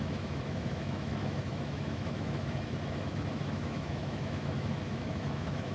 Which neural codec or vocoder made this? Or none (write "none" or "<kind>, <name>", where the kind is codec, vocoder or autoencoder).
autoencoder, DAC-VAE